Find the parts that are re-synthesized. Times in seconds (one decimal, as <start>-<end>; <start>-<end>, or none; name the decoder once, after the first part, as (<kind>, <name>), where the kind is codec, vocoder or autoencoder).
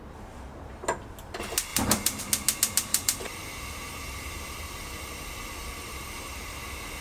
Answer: 1.7-2.2 (vocoder, BigVGAN v2); 2.9-6.2